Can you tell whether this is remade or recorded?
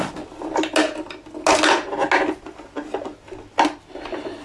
recorded